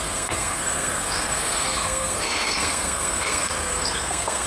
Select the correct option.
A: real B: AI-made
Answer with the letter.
B